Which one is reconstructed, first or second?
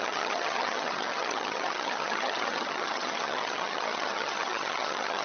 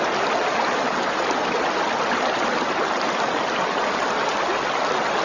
first